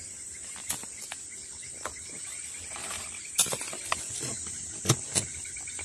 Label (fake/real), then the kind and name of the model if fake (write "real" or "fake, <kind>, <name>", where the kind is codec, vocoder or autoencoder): real